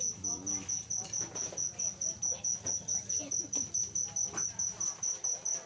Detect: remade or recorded recorded